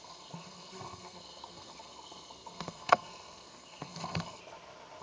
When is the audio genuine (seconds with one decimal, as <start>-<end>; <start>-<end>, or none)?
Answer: 4.4-5.0

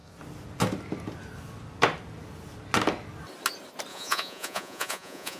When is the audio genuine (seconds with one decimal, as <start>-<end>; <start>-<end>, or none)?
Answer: 0.0-3.9

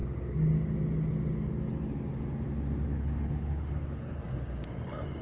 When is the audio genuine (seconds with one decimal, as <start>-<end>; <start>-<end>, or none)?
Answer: 0.0-2.9; 4.2-5.2

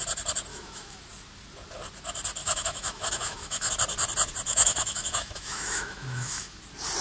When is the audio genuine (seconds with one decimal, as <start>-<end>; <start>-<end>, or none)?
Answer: 0.0-0.5; 1.0-2.4; 3.7-4.5; 6.6-7.0

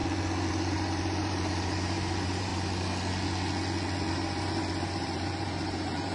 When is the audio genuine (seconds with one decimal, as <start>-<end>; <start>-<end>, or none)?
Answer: 0.0-0.5; 2.5-4.1

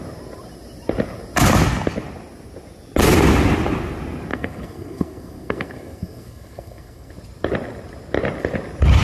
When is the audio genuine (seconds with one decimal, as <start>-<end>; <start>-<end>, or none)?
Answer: 0.0-4.3; 7.1-9.0

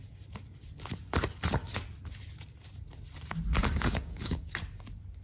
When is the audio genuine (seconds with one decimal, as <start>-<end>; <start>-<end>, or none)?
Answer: 0.0-3.6; 4.5-5.2

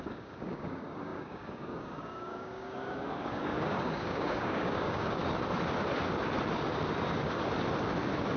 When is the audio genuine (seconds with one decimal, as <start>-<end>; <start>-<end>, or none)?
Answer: 5.2-8.4